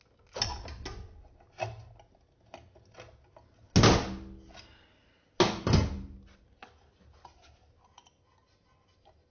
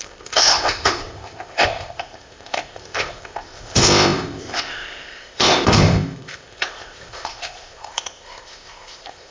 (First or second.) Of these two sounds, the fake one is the second